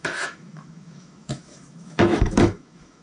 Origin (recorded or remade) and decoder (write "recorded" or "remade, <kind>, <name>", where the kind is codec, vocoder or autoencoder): remade, autoencoder, DAC-VAE